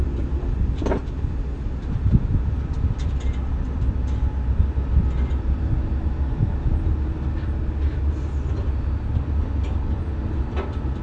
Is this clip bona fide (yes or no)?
yes